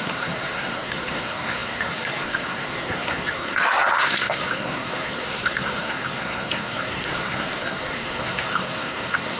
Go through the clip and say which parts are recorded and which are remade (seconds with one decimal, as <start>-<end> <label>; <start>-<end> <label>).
0.0-9.4 remade